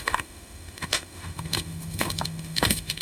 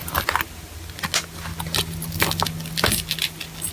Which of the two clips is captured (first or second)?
second